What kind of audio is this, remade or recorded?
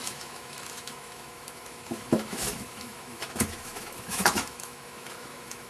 remade